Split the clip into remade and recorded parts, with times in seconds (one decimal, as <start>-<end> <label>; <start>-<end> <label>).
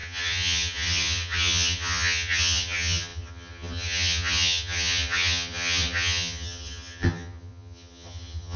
0.0-8.6 remade